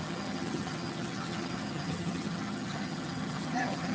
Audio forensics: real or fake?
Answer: fake